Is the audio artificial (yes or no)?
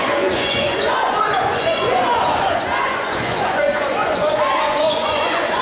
yes